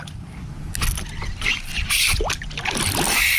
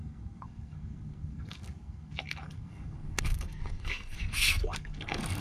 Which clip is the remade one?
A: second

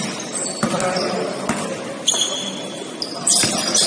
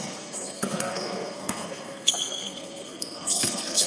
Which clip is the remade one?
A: second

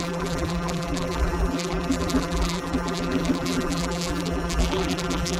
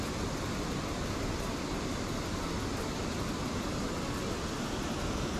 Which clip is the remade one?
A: first